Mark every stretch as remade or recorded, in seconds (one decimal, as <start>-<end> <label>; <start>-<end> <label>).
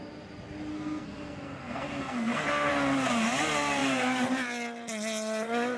0.0-0.7 recorded; 0.7-2.7 remade; 2.7-5.8 recorded